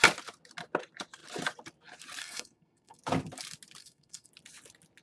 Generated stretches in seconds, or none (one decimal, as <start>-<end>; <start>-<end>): 2.2-3.0; 3.8-4.3